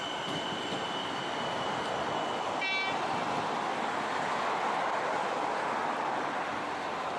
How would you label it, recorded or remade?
recorded